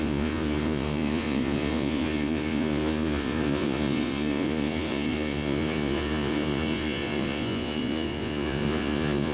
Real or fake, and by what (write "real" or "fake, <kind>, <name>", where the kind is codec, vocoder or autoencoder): fake, vocoder, Vocos